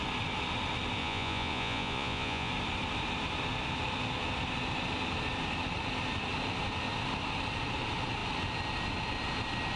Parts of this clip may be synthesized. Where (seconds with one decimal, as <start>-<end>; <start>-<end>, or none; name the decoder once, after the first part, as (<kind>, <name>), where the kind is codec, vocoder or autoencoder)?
1.0-2.5 (vocoder, Vocos)